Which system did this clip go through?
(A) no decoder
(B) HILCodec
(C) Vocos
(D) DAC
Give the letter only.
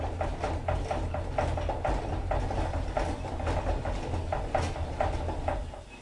A